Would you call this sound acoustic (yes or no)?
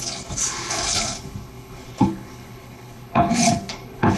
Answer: no